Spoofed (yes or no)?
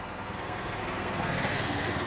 yes